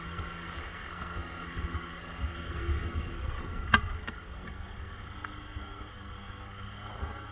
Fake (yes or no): yes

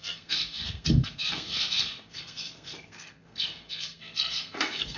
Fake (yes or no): yes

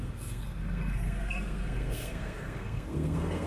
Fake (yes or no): yes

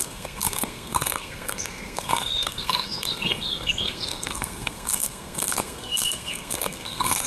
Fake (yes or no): yes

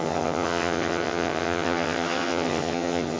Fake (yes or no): yes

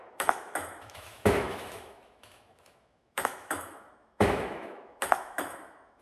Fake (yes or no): yes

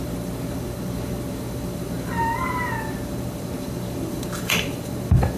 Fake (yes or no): yes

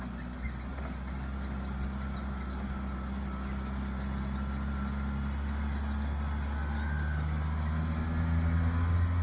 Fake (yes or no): no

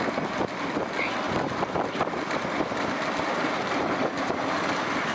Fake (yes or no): no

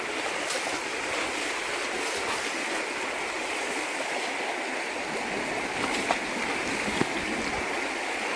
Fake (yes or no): no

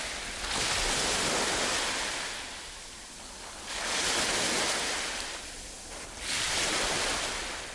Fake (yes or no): no